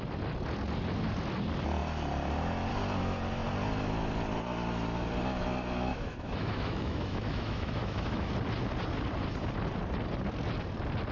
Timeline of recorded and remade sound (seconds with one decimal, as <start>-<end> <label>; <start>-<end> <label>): 0.0-5.9 recorded; 5.9-8.3 remade; 8.3-11.1 recorded